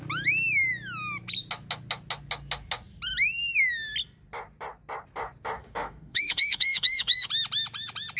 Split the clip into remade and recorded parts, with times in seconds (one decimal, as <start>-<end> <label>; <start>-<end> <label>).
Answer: 0.0-5.6 recorded; 5.6-7.3 remade; 7.3-8.2 recorded

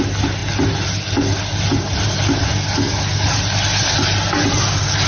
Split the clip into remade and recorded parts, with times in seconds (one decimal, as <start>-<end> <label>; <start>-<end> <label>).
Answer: 0.0-5.1 recorded

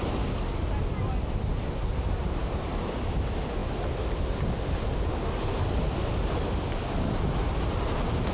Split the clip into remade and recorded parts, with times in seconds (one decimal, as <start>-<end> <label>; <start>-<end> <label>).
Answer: 0.0-8.3 recorded

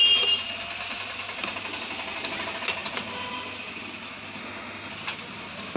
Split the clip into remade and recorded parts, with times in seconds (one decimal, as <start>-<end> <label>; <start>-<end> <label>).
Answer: 0.0-4.4 recorded; 4.4-4.9 remade; 4.9-5.8 recorded